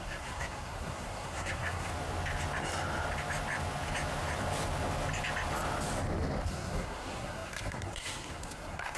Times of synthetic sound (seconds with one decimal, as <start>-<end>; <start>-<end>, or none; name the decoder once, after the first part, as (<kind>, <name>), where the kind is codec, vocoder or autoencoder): 0.0-1.9 (codec, SNAC); 6.5-9.0